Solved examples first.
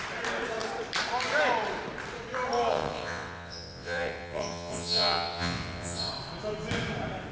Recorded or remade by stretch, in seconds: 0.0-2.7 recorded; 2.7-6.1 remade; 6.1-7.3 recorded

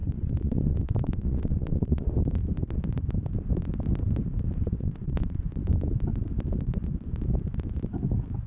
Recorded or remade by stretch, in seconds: 0.0-2.1 remade; 2.1-4.6 recorded; 4.6-5.4 remade; 5.4-8.5 recorded

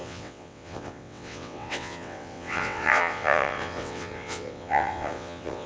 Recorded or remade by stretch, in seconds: 0.0-5.7 remade